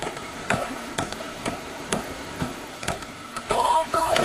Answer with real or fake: fake